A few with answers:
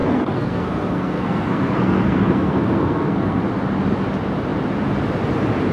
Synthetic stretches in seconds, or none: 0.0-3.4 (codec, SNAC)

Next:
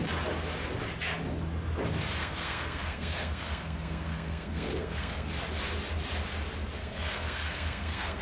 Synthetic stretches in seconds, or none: 2.2-5.3 (codec, SNAC); 6.8-8.2

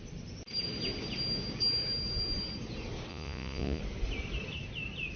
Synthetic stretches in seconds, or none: 3.1-3.8 (vocoder, Vocos)

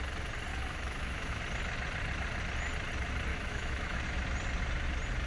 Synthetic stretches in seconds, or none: 0.5-1.4 (autoencoder, DAC-VAE); 3.3-4.0